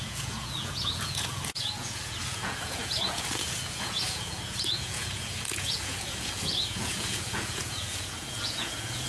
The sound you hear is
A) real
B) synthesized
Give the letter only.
B